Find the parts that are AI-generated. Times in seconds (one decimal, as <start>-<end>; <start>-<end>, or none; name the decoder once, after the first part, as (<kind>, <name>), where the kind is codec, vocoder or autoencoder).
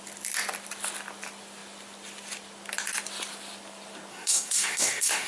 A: 4.1-5.3 (codec, SNAC)